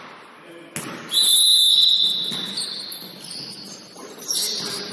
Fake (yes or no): no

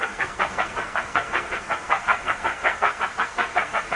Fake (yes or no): yes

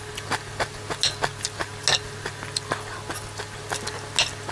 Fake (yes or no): no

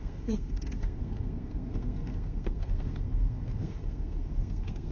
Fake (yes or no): yes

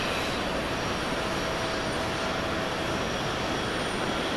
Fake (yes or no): no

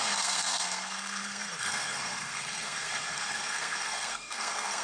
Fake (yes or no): yes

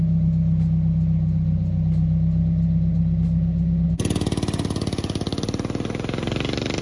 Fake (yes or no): no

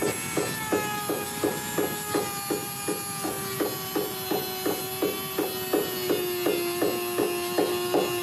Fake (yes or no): no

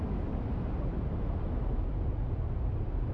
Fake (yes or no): no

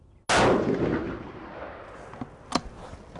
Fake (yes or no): no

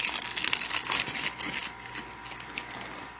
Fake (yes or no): no